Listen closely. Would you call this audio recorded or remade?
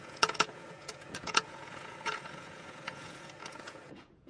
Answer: remade